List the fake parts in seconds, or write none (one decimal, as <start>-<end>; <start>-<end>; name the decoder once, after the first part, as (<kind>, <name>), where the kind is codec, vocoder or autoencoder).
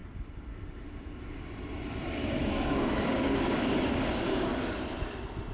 2.4-4.5 (codec, DAC)